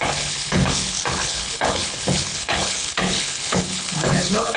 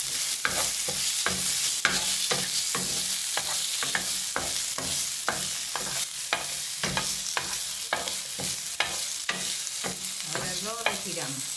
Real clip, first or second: second